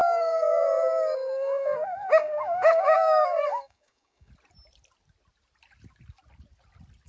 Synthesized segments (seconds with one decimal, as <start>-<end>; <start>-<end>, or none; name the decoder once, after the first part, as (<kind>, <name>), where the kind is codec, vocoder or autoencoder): 0.0-4.3 (codec, DAC)